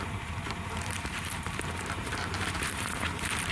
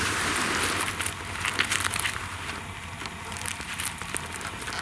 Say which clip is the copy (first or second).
first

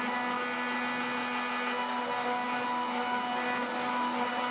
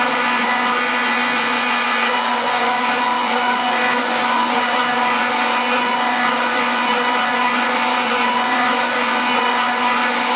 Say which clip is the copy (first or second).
second